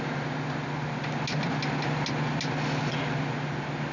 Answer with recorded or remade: recorded